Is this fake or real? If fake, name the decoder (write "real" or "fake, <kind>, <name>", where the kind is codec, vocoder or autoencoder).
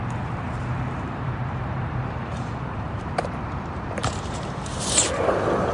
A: fake, vocoder, BigVGAN v2